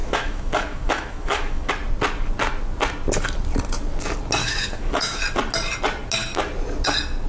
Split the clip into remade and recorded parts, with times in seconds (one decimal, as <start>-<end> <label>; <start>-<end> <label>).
0.0-1.7 remade; 1.7-4.4 recorded; 4.4-5.2 remade; 5.2-7.3 recorded